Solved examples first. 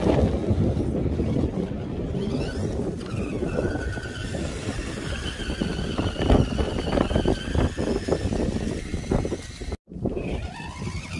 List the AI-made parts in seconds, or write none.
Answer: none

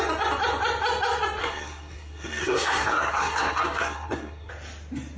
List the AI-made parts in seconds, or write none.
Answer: 1.4-4.5 (codec, SNAC)

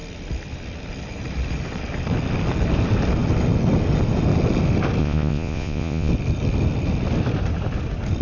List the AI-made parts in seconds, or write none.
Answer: 5.0-6.1 (vocoder, Vocos)

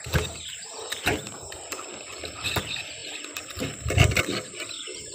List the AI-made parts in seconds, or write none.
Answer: none

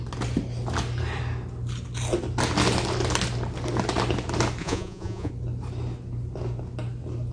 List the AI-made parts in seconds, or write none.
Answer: 4.6-5.3 (vocoder, Vocos)

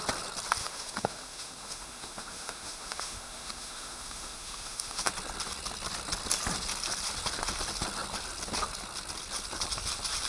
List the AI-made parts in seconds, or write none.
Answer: 0.6-5.1 (autoencoder, DAC-VAE)